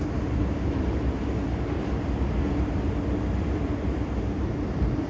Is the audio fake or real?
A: fake